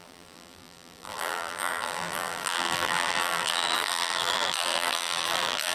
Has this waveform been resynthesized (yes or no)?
yes